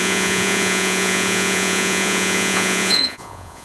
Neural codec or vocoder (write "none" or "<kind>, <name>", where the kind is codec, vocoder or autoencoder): vocoder, Vocos